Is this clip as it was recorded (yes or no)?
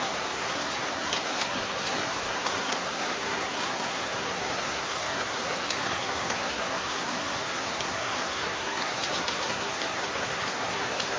no